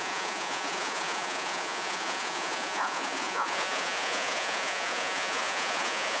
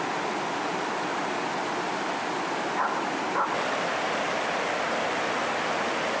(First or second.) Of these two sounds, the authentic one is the second